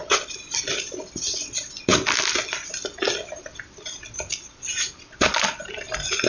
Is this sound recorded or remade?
recorded